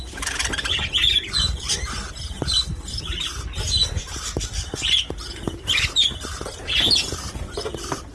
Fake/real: fake